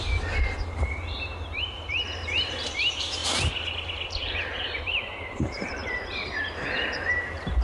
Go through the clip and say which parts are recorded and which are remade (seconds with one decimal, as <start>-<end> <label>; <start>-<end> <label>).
0.0-3.2 remade; 3.2-4.4 recorded; 4.4-7.6 remade